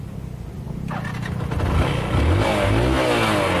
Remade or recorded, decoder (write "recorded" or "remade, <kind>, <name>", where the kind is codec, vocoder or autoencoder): recorded